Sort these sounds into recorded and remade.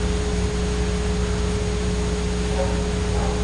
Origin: recorded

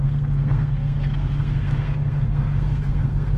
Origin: remade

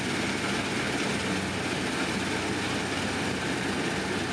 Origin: recorded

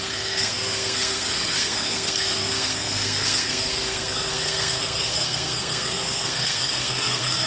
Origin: remade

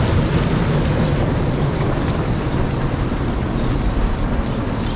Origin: recorded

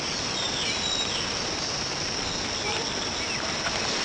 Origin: recorded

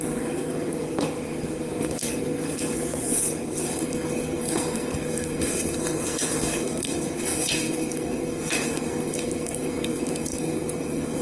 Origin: remade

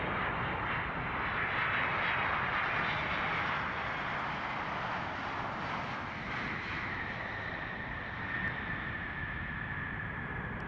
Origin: recorded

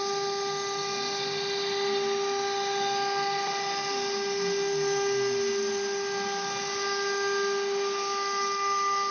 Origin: recorded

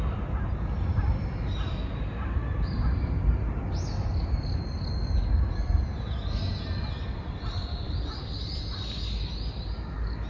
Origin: recorded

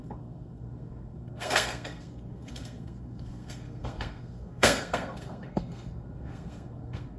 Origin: remade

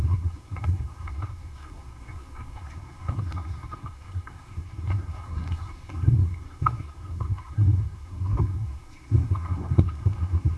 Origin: remade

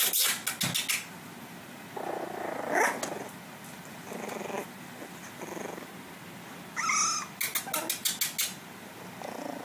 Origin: recorded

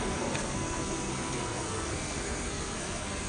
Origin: remade